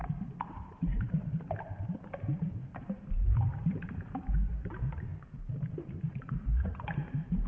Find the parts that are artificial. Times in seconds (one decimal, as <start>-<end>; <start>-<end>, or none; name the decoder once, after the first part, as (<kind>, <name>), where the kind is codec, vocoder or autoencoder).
0.0-5.1 (vocoder, BigVGAN v2); 7.1-7.5